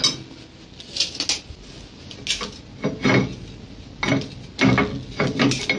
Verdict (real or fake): real